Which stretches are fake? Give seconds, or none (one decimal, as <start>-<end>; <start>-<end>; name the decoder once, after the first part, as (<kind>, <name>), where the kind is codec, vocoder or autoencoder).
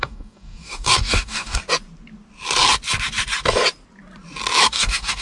0.0-1.6 (codec, DAC); 4.7-5.2